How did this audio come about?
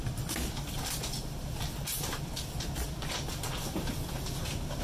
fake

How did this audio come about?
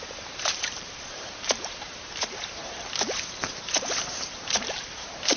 fake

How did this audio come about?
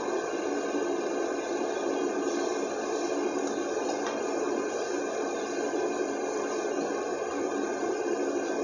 real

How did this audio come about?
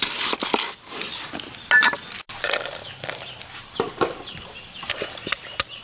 real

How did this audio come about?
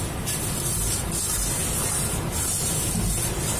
real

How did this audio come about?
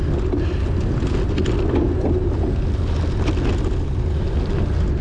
real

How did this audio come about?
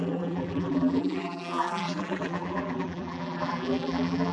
fake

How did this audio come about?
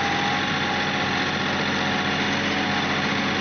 real